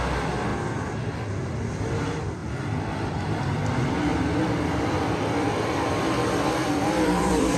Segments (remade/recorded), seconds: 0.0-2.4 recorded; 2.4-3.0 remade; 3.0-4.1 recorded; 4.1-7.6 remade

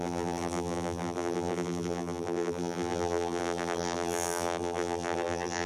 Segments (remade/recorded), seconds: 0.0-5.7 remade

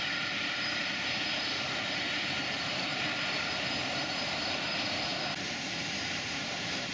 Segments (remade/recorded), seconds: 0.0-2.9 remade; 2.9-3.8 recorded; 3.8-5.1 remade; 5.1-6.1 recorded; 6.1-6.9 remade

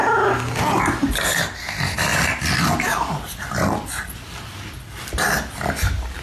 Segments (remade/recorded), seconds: 0.0-6.2 recorded

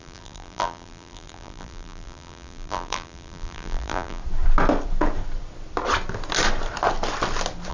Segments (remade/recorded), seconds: 0.0-4.2 remade; 4.2-7.7 recorded